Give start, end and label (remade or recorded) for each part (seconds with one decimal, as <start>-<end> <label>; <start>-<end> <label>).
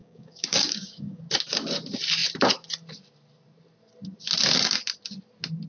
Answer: 0.0-1.2 remade; 1.2-5.7 recorded